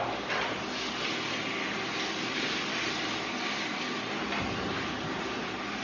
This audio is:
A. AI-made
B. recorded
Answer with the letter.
B